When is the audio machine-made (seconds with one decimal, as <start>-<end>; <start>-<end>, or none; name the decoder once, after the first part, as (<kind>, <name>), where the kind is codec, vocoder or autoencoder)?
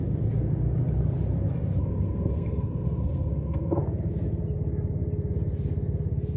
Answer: 1.8-3.8 (codec, SNAC)